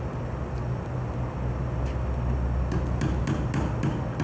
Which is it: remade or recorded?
recorded